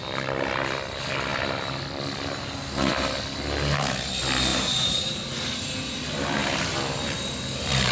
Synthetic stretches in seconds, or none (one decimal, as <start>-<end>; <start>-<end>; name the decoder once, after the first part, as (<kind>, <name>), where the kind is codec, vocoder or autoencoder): 6.4-7.9 (vocoder, BigVGAN v2)